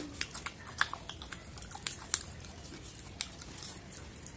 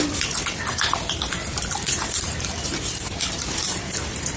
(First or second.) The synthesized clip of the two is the second